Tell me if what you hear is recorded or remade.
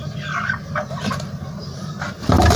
remade